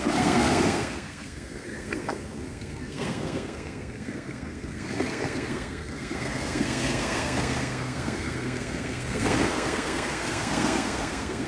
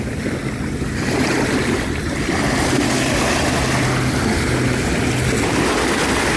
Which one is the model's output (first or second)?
first